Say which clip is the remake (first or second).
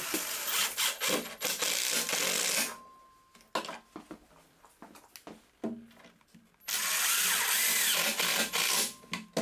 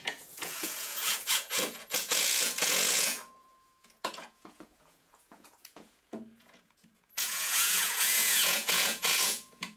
second